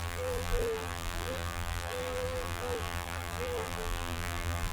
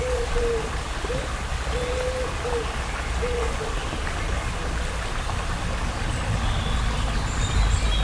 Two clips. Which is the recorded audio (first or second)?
second